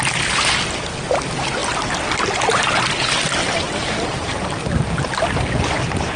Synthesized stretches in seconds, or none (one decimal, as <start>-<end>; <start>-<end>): none